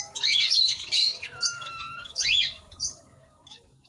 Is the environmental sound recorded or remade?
remade